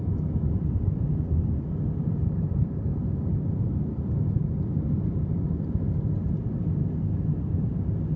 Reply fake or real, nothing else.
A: real